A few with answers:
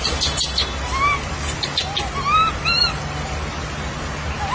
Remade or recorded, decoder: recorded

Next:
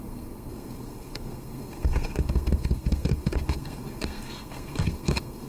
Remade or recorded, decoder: remade, codec, SNAC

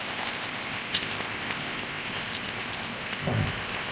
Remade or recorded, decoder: remade, codec, ZipCodec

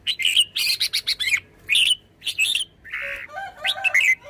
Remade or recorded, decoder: recorded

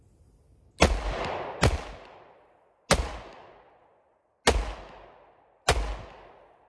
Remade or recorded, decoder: recorded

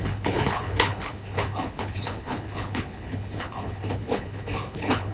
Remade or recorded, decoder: remade, codec, HILCodec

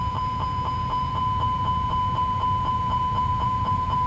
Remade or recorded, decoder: remade, vocoder, Vocos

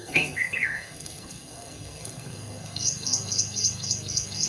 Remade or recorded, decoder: remade, codec, SNAC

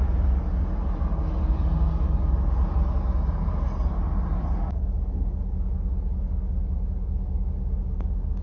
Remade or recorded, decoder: recorded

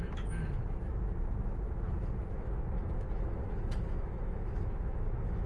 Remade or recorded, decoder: remade, autoencoder, DAC-VAE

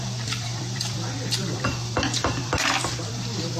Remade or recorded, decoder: remade, vocoder, BigVGAN v2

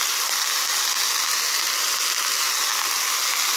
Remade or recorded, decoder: recorded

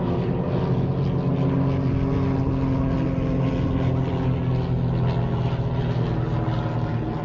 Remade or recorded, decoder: recorded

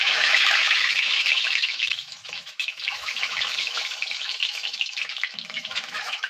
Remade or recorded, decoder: remade, autoencoder, DAC-VAE